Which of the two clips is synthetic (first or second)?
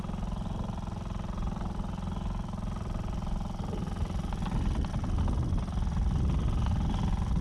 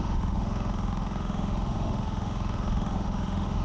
second